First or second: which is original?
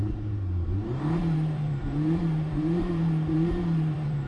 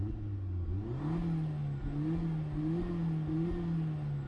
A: second